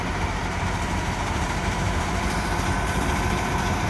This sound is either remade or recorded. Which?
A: remade